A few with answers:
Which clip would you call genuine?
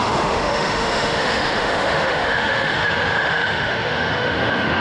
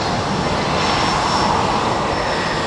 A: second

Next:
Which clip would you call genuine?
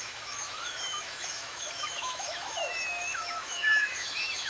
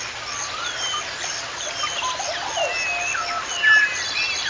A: second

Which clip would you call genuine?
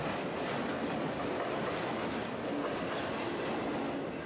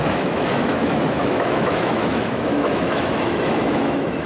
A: first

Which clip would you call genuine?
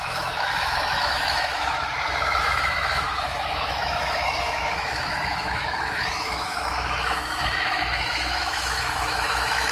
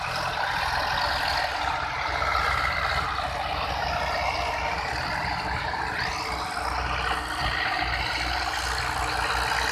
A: second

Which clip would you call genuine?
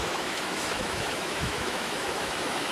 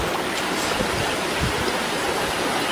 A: second